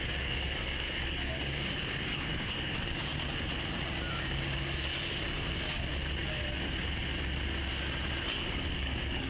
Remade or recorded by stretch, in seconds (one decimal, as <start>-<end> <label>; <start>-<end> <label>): 0.0-3.1 remade; 3.1-4.1 recorded; 4.1-4.9 remade; 4.9-5.4 recorded; 5.4-5.9 remade; 5.9-8.2 recorded; 8.2-9.3 remade